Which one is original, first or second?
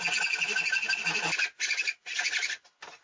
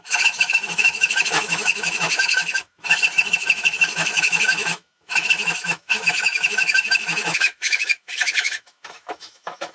first